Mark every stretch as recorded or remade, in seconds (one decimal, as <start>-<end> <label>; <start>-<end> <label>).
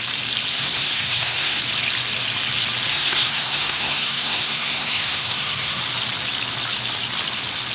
0.0-0.5 recorded; 0.5-1.6 remade; 1.6-2.9 recorded; 2.9-5.8 remade; 5.8-7.7 recorded